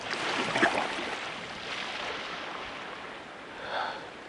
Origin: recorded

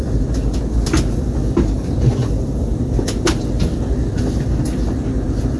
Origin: recorded